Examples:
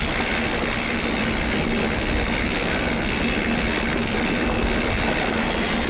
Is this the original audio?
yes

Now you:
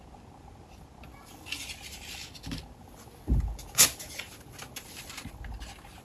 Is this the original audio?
yes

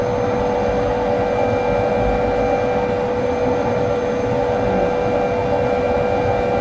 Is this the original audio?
yes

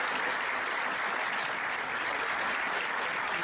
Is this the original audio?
yes